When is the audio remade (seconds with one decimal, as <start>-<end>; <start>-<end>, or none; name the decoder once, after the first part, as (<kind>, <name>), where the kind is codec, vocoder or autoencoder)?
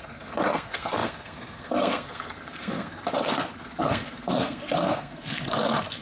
0.0-6.0 (codec, SNAC)